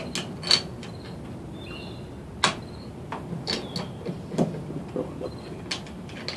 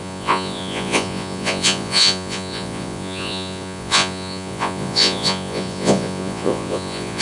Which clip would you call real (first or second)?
first